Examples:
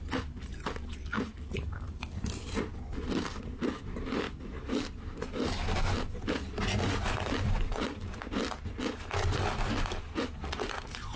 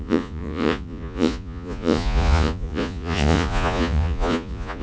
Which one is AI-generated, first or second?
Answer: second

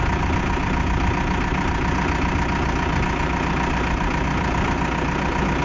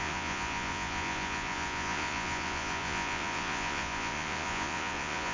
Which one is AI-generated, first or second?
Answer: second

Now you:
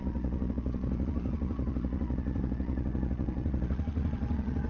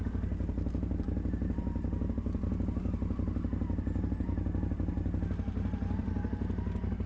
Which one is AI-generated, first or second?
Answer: first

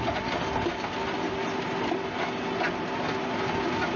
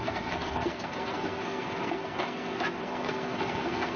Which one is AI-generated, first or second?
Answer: second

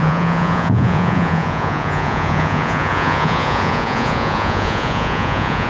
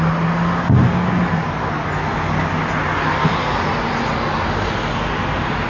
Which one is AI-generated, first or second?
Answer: first